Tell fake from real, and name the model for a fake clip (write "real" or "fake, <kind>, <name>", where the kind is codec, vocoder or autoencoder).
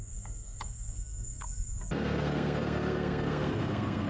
fake, codec, SNAC